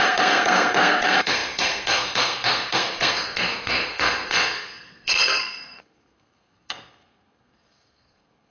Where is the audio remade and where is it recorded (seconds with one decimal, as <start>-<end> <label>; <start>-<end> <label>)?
0.0-8.5 remade